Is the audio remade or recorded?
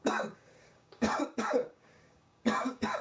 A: remade